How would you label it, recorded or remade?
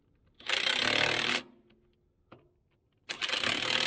recorded